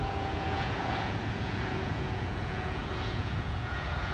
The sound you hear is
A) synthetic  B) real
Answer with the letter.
A